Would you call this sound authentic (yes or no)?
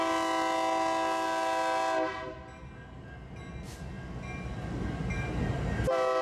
yes